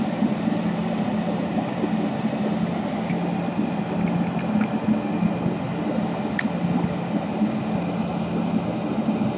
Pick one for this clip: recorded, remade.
recorded